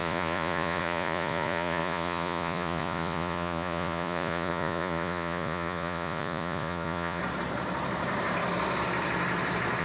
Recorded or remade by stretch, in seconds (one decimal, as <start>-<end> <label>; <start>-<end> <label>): 0.0-7.2 remade; 7.2-9.8 recorded